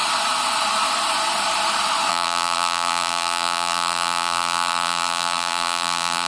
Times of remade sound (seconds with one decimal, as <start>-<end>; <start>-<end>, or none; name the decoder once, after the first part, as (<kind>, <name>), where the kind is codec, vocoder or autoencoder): 2.1-6.3 (vocoder, BigVGAN v2)